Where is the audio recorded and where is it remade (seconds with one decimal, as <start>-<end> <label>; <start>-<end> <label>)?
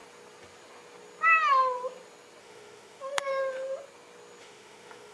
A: 0.0-2.4 recorded; 2.4-3.3 remade; 3.3-4.4 recorded; 4.4-5.1 remade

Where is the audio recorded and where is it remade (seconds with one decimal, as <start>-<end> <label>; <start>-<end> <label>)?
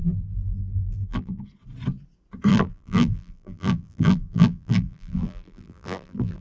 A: 0.0-1.4 remade; 1.4-2.5 recorded; 2.5-6.4 remade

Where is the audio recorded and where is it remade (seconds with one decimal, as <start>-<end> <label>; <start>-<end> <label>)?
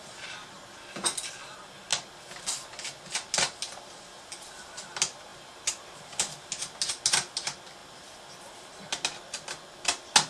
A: 0.0-10.3 recorded